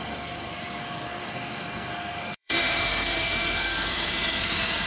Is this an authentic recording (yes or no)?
no